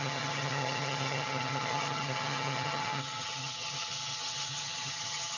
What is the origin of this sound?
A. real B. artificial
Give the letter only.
B